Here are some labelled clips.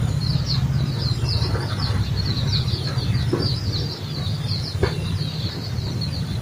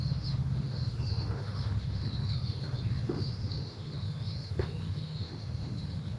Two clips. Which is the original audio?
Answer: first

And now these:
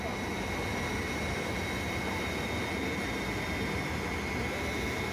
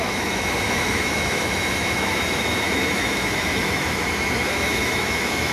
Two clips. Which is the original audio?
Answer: first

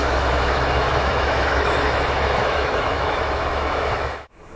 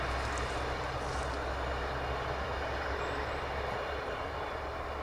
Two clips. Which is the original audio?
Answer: second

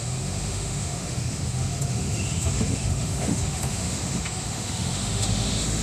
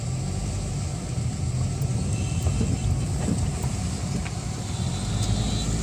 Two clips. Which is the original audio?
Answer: second